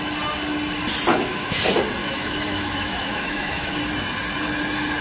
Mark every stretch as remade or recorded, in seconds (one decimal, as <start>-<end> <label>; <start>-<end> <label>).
0.0-1.1 recorded; 1.1-1.6 remade; 1.6-2.0 recorded; 2.0-3.8 remade; 3.8-5.0 recorded